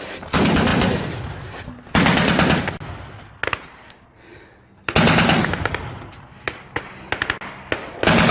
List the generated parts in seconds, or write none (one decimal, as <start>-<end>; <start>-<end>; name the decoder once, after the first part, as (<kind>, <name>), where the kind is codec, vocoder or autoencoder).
none